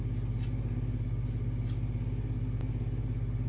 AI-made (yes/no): no